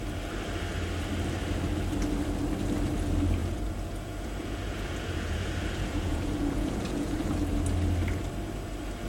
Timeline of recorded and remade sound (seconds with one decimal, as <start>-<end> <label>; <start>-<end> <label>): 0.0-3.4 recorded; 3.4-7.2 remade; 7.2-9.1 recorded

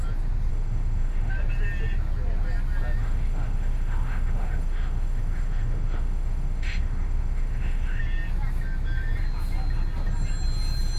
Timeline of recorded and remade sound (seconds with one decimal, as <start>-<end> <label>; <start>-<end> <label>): 0.0-0.5 recorded; 0.5-1.3 remade; 1.3-3.0 recorded; 3.0-8.0 remade; 8.0-11.0 recorded

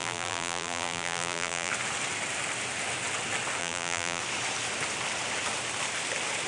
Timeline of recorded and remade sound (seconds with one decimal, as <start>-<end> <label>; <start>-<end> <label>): 0.0-1.7 remade; 1.7-3.6 recorded; 3.6-4.2 remade; 4.2-6.5 recorded

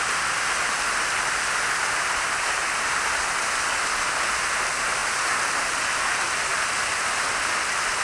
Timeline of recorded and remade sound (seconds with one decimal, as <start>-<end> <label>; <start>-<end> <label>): 0.0-8.0 recorded

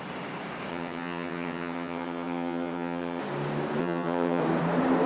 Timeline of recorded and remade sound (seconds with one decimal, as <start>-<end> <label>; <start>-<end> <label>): 0.0-0.7 recorded; 0.7-3.2 remade; 3.2-3.8 recorded; 3.8-4.4 remade; 4.4-5.1 recorded

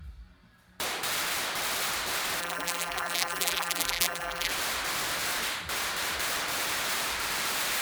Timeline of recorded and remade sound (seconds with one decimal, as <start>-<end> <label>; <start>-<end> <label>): 0.0-2.4 recorded; 2.4-4.5 remade; 4.5-7.8 recorded

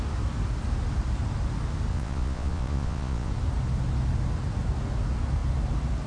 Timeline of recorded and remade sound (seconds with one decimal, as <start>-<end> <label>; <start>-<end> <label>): 0.0-1.9 recorded; 1.9-3.3 remade; 3.3-6.1 recorded